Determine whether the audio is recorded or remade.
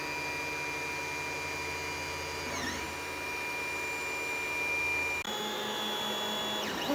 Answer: recorded